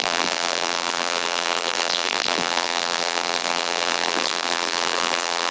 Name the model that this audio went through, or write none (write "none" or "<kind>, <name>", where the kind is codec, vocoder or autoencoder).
vocoder, BigVGAN v2